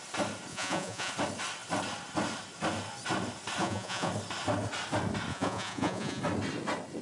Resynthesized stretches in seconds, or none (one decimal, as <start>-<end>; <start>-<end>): 0.5-1.1; 3.6-4.1; 5.3-6.2